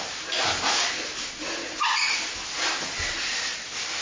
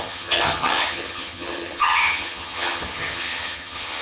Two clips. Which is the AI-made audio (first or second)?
second